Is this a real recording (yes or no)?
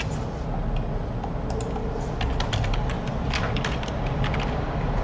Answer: yes